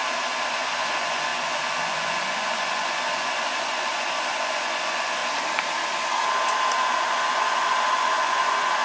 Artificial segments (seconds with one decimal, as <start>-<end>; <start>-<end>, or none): 0.5-5.2; 6.8-8.8